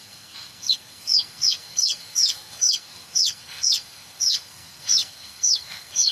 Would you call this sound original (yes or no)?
no